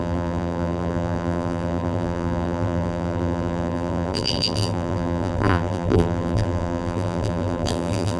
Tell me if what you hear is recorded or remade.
remade